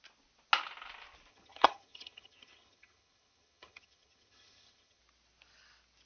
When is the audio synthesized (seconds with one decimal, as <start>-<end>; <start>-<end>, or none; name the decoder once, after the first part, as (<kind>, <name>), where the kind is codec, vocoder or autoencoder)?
1.3-5.0 (vocoder, HiFi-GAN)